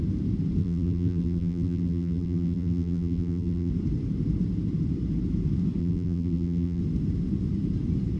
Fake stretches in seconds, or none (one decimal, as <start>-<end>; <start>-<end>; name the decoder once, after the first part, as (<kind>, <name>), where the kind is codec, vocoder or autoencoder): 0.6-3.7 (vocoder, BigVGAN v2); 5.8-6.8